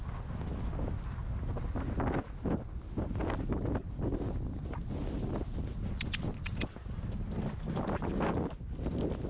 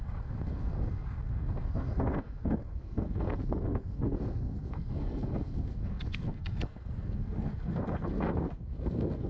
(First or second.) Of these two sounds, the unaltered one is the first